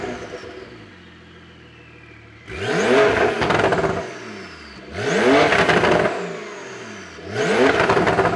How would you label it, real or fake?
real